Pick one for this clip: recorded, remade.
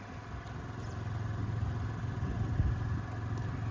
recorded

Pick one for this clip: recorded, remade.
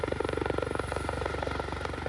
remade